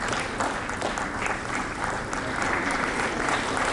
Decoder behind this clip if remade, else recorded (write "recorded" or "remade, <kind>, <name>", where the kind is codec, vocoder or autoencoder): recorded